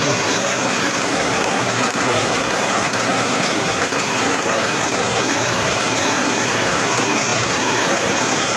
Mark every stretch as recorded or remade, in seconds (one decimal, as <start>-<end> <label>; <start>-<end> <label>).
0.0-8.6 remade